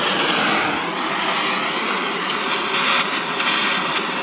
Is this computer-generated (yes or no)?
no